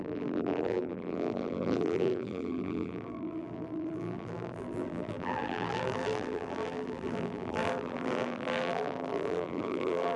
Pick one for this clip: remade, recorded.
remade